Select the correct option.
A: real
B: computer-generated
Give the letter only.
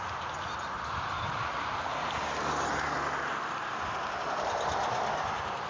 A